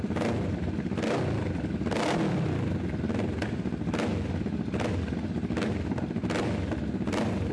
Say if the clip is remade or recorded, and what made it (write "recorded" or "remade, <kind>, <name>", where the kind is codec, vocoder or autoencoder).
recorded